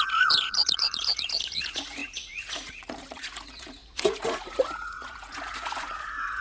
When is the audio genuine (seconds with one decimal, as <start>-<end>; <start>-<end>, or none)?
none